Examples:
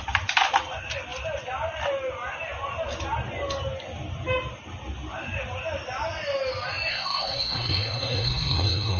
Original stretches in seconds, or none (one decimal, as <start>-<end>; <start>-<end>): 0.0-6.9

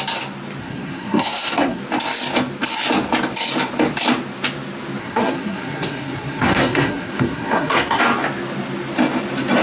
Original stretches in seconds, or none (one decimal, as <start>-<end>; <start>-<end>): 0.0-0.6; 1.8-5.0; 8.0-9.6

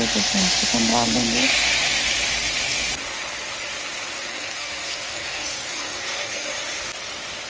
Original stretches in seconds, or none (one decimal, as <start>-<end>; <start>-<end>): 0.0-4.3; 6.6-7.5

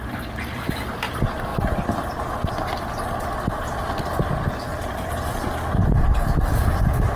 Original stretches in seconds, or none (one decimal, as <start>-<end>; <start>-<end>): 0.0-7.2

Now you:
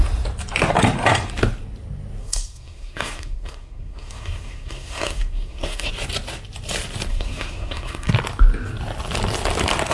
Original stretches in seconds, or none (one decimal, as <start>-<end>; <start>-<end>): 0.0-2.2; 5.9-7.1; 8.1-9.9

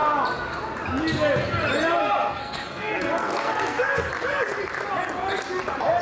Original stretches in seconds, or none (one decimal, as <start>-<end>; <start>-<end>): 0.0-2.2; 4.1-6.0